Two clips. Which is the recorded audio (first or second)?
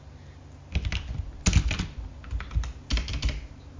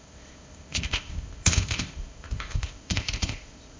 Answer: first